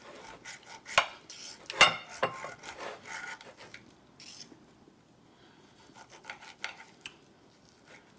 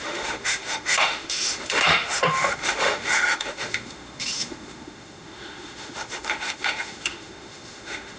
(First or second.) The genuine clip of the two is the first